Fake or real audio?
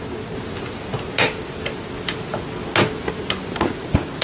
real